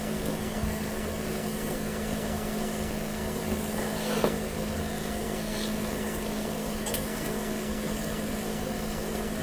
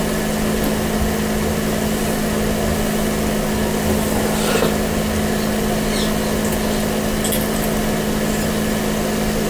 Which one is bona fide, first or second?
second